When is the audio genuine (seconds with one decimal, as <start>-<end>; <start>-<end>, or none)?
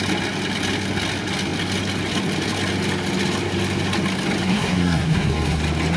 0.0-4.5; 5.6-6.0